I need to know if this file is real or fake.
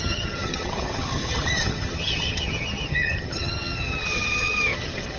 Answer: fake